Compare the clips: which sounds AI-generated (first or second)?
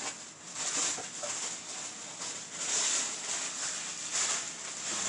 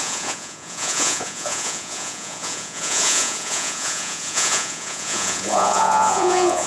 second